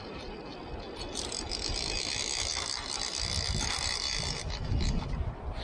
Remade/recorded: recorded